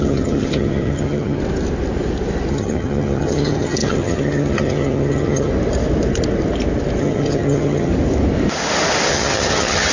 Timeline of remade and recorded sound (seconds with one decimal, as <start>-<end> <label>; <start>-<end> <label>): 0.0-1.4 remade; 1.4-2.5 recorded; 2.5-5.5 remade; 5.5-7.0 recorded; 7.0-7.9 remade; 7.9-9.1 recorded; 9.1-9.9 remade